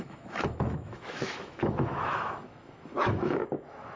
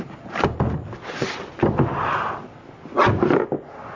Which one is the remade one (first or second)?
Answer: first